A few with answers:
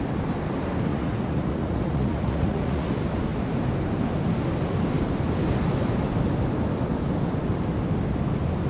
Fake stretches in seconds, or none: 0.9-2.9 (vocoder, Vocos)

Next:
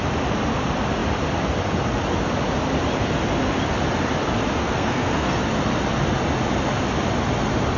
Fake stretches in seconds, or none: 4.6-5.4 (codec, SNAC)

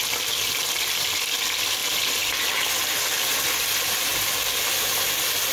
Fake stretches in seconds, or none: none

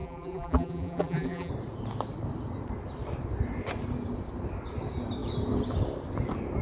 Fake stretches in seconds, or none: 0.0-1.5 (vocoder, BigVGAN v2)

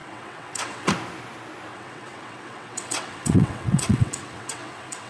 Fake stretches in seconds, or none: 0.0-0.9 (vocoder, WaveNeXt); 1.7-5.1